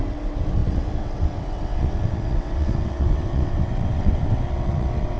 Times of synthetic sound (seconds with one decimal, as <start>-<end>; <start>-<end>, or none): 0.0-5.2